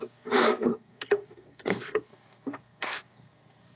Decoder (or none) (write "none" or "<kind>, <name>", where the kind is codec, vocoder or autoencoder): codec, SNAC